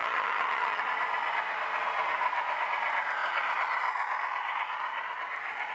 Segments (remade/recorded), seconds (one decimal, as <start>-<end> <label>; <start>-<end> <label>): 0.0-0.8 remade; 0.8-5.7 recorded